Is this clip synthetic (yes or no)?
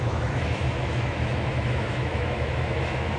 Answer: yes